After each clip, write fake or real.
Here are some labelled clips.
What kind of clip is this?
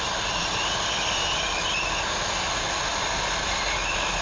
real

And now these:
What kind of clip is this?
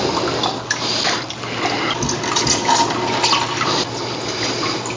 real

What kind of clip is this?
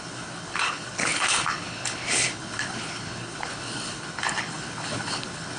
fake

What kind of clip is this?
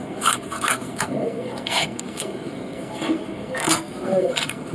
fake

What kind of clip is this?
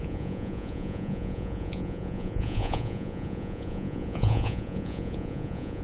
fake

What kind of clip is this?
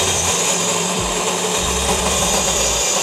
fake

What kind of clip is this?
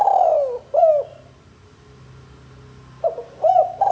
real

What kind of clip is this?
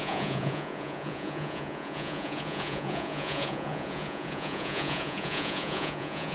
fake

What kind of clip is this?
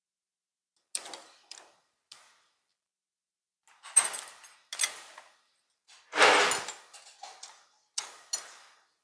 real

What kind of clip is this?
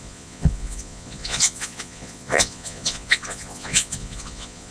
fake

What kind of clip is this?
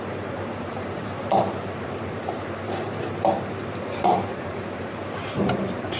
fake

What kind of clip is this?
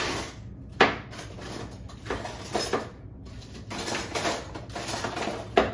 real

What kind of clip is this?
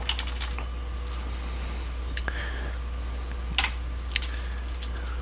real